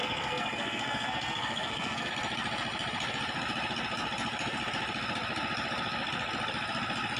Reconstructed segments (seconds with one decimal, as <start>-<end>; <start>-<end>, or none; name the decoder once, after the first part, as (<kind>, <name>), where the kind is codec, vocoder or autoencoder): 0.0-2.1 (codec, SNAC)